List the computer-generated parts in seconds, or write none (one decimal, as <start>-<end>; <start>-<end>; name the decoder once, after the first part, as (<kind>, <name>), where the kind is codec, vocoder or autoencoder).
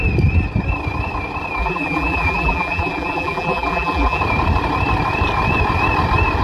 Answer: 1.6-4.2 (vocoder, BigVGAN v2)